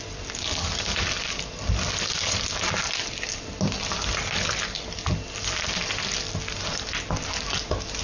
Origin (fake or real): real